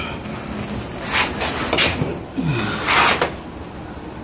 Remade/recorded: recorded